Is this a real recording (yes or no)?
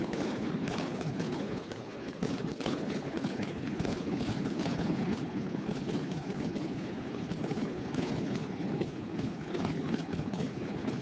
no